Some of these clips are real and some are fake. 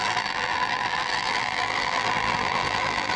fake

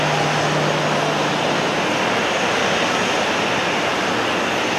real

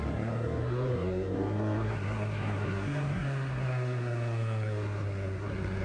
fake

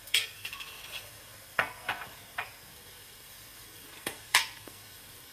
fake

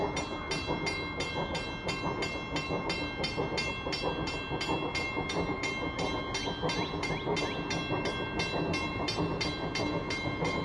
real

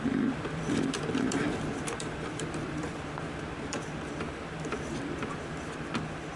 fake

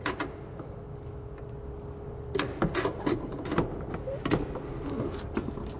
real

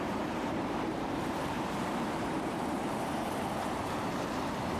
fake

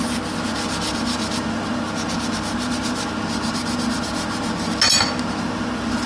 real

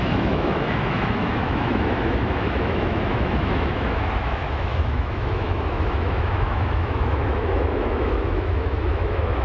fake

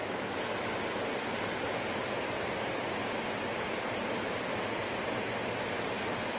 real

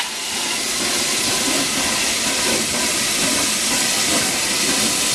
real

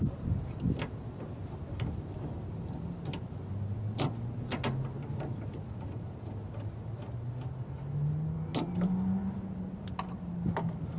real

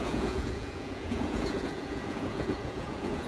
fake